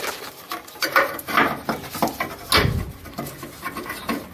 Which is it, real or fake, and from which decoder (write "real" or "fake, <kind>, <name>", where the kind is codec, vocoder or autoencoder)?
real